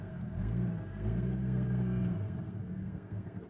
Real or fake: fake